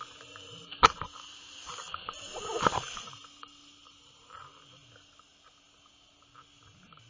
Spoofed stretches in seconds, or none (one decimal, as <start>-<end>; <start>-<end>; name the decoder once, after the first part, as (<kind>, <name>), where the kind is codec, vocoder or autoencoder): none